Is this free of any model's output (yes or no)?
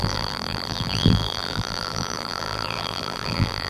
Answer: no